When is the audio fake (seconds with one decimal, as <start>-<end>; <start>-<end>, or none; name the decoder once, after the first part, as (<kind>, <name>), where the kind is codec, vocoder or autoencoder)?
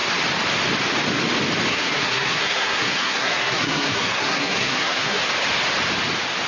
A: 1.7-5.2 (codec, SNAC)